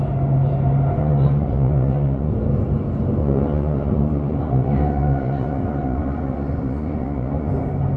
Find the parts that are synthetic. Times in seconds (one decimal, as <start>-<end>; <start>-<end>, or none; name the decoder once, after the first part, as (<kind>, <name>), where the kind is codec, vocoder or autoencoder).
1.0-2.3 (vocoder, Vocos); 3.2-7.5